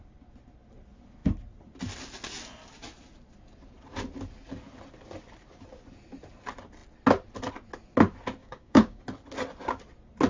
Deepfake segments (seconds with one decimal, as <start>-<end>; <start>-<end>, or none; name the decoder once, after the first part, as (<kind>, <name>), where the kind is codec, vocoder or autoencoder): 8.4-9.0 (codec, DAC)